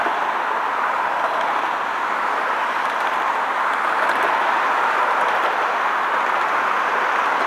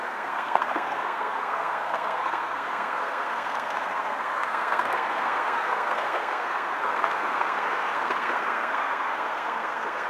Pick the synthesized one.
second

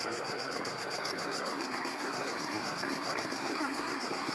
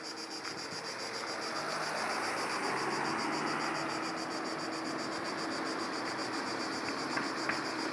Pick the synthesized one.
first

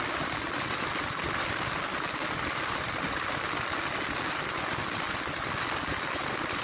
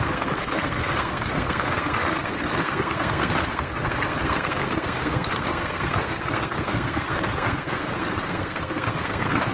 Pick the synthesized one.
second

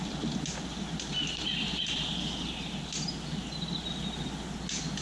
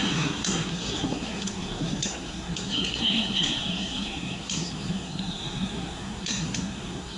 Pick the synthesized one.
second